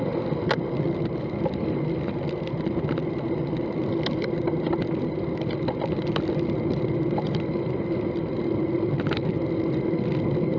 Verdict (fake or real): real